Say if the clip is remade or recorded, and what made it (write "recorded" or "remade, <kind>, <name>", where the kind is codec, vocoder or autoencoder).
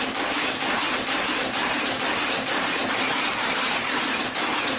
recorded